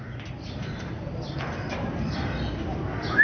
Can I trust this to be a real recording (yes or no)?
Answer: yes